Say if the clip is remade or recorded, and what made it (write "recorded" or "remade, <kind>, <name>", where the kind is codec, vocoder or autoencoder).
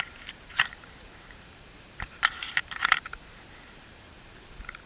remade, vocoder, BigVGAN v2